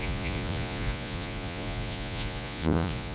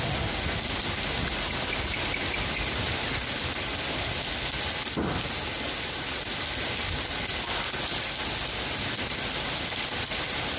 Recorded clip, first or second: second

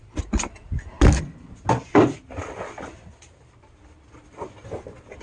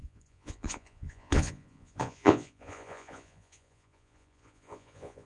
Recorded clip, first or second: first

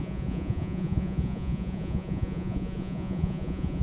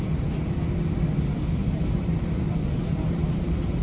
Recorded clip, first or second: second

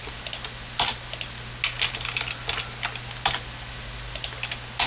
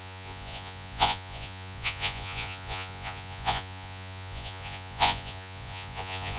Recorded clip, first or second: first